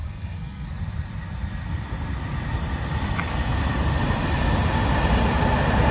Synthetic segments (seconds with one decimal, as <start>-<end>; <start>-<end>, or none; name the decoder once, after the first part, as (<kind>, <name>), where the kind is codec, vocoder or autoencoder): 0.0-0.7 (codec, SNAC)